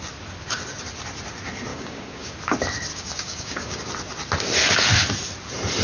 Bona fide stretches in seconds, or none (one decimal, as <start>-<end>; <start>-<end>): 0.0-1.7; 2.3-2.9; 3.8-5.8